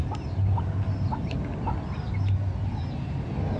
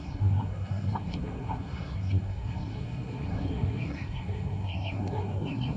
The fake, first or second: second